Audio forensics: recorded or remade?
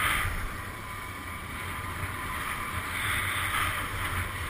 recorded